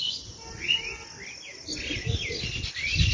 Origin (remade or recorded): recorded